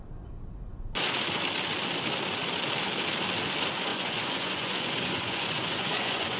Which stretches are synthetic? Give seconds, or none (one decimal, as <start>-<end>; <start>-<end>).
3.9-6.4